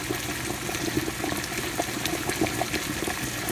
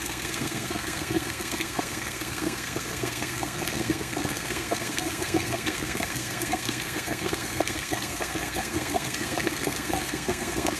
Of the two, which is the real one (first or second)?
first